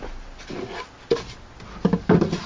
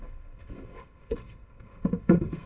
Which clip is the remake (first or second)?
second